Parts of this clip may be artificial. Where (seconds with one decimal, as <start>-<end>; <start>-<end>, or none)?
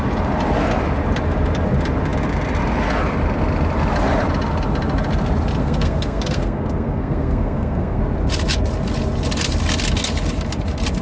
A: 5.6-8.0